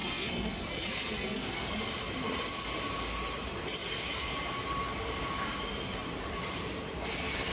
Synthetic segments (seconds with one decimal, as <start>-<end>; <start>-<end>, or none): 0.0-1.8